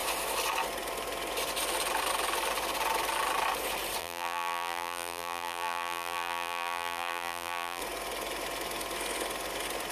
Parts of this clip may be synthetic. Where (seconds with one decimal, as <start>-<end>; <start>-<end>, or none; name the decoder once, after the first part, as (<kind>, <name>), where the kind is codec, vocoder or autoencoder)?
4.0-7.8 (vocoder, BigVGAN v2)